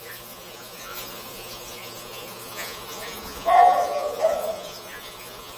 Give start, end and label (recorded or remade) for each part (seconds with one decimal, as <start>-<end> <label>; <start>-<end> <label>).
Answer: 0.0-5.6 remade